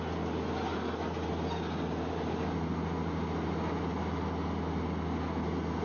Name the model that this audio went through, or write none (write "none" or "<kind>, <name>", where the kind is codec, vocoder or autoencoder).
none